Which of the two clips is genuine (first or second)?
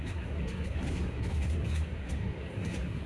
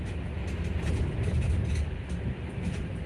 second